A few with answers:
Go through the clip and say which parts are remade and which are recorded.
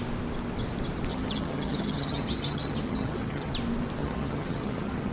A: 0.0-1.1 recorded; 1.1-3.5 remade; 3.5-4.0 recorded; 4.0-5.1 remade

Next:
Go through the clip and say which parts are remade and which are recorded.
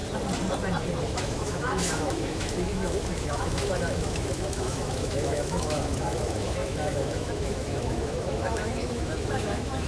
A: 0.0-1.0 recorded; 1.0-9.9 remade